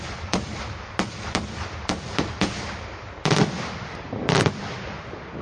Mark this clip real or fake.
real